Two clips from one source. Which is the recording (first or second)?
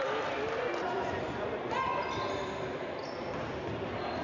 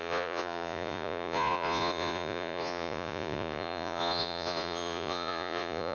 first